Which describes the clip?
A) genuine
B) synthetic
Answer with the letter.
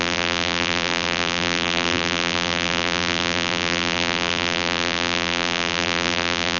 B